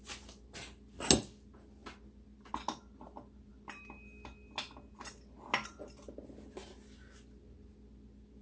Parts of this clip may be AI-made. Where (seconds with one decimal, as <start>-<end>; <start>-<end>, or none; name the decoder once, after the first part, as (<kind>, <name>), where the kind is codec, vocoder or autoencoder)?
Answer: none